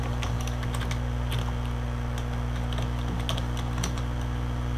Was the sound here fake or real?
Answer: real